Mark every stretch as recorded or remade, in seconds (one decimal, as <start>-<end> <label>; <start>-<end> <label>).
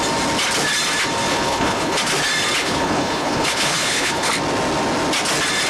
0.0-1.3 recorded; 1.3-2.0 remade; 2.0-2.6 recorded; 2.6-4.3 remade; 4.3-5.7 recorded